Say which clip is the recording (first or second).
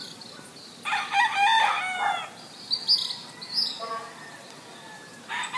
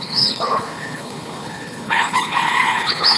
first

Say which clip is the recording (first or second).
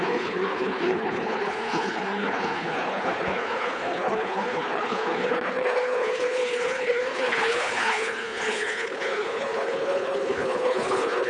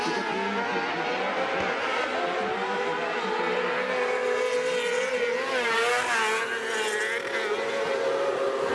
second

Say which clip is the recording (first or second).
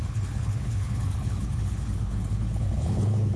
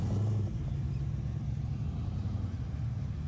second